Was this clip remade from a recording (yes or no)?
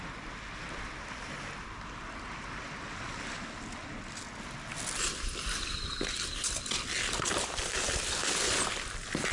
no